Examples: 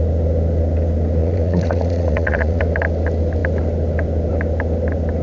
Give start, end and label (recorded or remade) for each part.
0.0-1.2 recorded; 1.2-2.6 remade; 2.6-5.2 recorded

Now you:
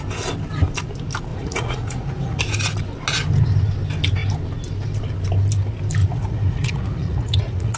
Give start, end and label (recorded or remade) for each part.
0.0-1.3 recorded; 1.3-2.4 remade; 2.4-6.0 recorded; 6.0-7.8 remade

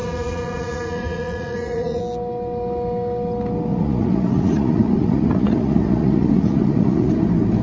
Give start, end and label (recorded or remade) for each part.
0.0-2.0 remade; 2.0-3.7 recorded; 3.7-7.1 remade; 7.1-7.6 recorded